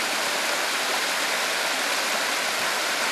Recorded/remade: recorded